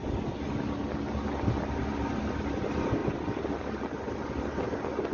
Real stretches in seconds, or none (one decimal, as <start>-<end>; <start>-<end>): 0.0-5.1